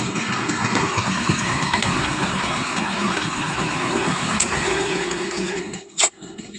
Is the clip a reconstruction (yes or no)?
yes